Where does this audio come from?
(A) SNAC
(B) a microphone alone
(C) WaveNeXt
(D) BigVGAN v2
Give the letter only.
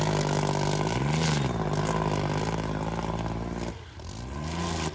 B